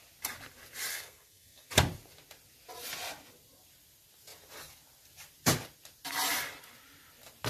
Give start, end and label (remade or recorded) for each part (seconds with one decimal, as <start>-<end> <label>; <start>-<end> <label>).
0.0-0.9 recorded; 0.9-1.7 remade; 1.7-7.5 recorded